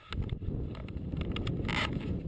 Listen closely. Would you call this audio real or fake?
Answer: real